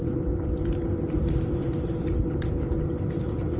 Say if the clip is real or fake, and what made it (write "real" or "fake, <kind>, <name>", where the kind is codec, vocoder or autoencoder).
real